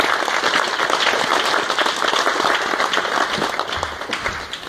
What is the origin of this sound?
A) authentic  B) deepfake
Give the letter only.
A